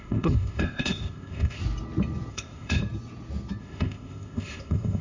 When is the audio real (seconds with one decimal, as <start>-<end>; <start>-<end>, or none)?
1.6-2.3; 2.8-3.6